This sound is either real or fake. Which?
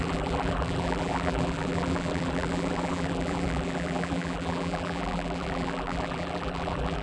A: fake